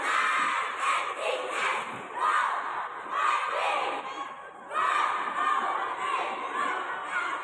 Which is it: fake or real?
real